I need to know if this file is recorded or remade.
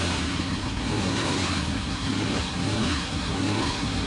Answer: remade